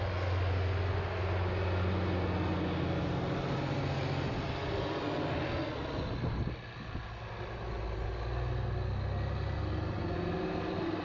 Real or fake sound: real